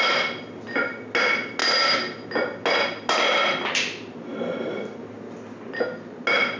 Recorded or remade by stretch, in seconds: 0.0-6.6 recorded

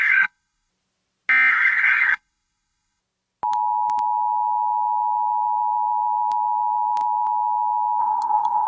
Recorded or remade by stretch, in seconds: 0.0-0.7 remade; 0.7-1.5 recorded; 1.5-3.0 remade; 3.0-8.0 recorded; 8.0-8.7 remade

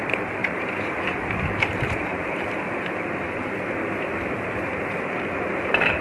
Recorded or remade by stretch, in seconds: 0.0-6.0 remade

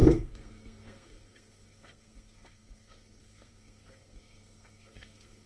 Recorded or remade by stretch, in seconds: 0.0-5.5 remade